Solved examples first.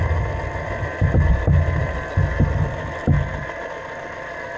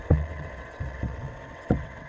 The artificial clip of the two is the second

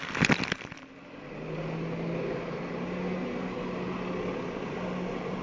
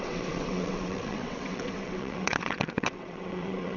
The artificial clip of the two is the second